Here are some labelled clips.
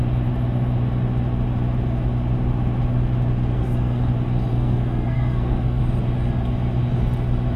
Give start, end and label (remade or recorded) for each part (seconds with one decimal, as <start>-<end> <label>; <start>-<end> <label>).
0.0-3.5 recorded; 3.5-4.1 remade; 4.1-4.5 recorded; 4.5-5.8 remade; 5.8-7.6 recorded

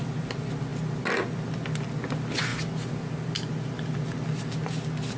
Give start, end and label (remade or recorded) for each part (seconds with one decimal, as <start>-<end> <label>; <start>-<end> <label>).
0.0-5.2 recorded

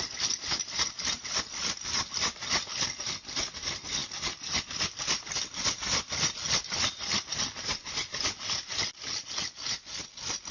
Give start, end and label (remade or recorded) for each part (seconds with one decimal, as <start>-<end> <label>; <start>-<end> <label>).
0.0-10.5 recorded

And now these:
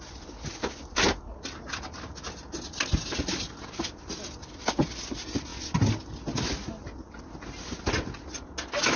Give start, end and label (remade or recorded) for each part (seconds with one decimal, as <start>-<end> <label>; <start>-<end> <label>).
0.0-9.0 recorded

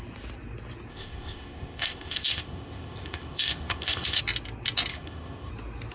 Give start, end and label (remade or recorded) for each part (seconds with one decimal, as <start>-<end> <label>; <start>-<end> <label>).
0.0-0.9 recorded; 0.9-4.2 remade; 4.2-4.9 recorded; 4.9-5.5 remade; 5.5-5.9 recorded

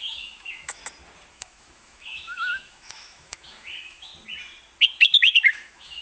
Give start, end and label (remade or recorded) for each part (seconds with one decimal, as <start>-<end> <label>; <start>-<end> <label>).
0.0-0.8 remade; 0.8-1.3 recorded; 1.3-4.1 remade; 4.1-5.0 recorded; 5.0-6.0 remade

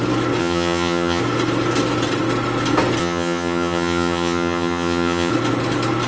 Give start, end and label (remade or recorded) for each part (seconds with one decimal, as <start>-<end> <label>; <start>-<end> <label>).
0.0-0.4 recorded; 0.4-1.2 remade; 1.2-3.0 recorded; 3.0-5.3 remade; 5.3-6.1 recorded

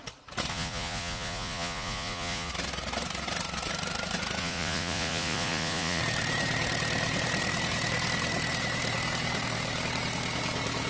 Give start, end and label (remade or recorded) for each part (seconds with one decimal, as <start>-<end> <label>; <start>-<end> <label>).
0.0-0.5 recorded; 0.5-2.5 remade; 2.5-4.4 recorded; 4.4-6.0 remade; 6.0-10.9 recorded